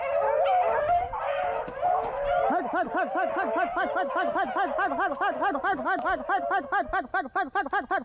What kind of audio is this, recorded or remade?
recorded